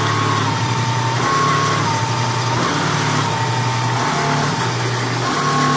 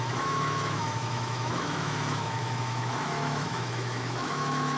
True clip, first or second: first